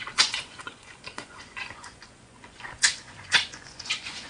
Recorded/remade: remade